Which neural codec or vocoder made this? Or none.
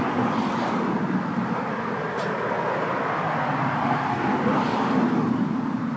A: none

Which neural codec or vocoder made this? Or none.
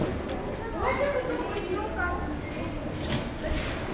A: none